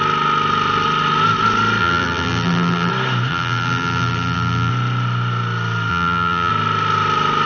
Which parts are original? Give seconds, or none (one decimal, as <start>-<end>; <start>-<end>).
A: 0.0-1.8; 2.9-3.3; 4.7-5.9; 6.5-7.5